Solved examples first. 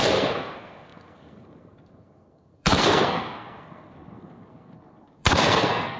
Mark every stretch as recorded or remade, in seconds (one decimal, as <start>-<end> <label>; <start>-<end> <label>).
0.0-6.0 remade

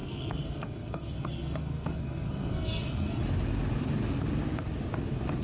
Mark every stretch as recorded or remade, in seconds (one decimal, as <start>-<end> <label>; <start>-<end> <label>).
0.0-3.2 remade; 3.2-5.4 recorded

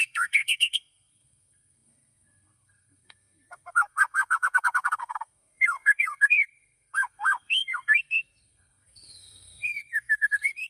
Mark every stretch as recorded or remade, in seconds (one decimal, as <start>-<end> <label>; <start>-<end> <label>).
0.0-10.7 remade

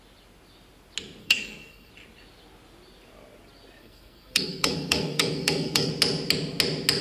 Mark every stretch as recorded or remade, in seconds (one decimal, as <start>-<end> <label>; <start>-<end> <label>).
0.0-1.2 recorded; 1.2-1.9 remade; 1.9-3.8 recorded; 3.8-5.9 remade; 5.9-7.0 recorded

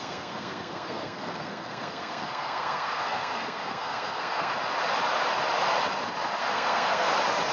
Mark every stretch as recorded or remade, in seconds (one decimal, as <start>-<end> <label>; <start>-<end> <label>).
0.0-4.5 remade; 4.5-6.4 recorded; 6.4-7.1 remade; 7.1-7.5 recorded

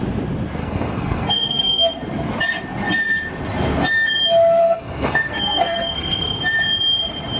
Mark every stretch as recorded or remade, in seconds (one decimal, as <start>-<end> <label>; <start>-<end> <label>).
0.0-0.6 recorded; 0.6-2.0 remade; 2.0-4.6 recorded; 4.6-6.4 remade; 6.4-7.4 recorded

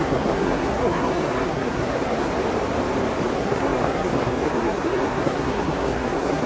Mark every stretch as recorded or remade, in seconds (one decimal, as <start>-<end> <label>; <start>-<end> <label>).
0.0-2.3 remade; 2.3-3.3 recorded; 3.3-6.5 remade